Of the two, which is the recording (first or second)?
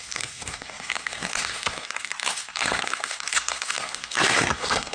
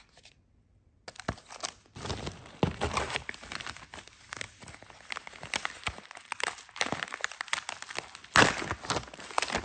second